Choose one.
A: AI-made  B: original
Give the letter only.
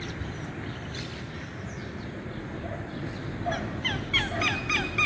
B